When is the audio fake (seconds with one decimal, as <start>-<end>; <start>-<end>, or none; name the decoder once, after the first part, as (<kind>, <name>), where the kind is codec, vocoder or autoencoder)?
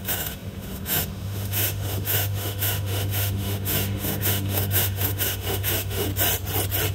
0.0-6.1 (autoencoder, DAC-VAE)